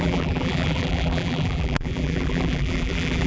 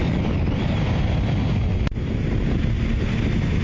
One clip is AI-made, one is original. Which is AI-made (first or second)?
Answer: first